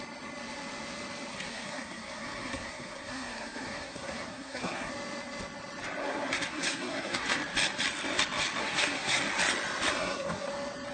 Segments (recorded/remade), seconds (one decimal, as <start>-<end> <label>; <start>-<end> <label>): 0.0-1.3 recorded; 1.3-4.9 remade; 4.9-6.0 recorded; 6.0-7.4 remade; 7.4-8.6 recorded; 8.6-9.2 remade; 9.2-9.9 recorded; 9.9-10.5 remade; 10.5-10.9 recorded